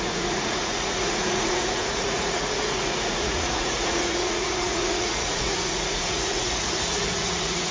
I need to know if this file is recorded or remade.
remade